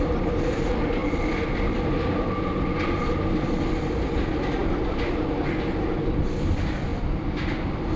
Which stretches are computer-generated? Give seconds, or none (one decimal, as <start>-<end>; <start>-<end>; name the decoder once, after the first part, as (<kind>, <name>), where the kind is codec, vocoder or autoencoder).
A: 4.6-5.1 (vocoder, BigVGAN v2); 6.9-8.0